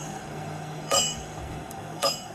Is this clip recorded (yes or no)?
no